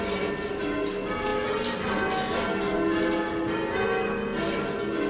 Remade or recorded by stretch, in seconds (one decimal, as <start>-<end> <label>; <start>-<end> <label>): 0.0-5.1 recorded